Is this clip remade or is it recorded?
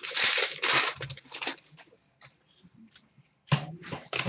remade